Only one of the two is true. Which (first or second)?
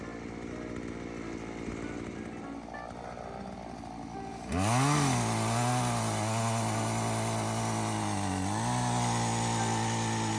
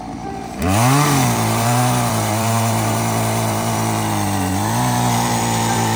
first